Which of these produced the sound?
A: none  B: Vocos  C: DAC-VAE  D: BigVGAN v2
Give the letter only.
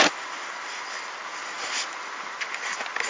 A